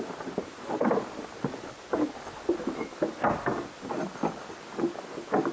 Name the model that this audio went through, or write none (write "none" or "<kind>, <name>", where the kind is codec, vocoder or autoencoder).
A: none